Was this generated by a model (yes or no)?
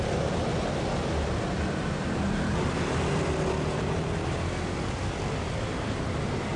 no